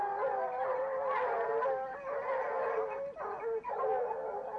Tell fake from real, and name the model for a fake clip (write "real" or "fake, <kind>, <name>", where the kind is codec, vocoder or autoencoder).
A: real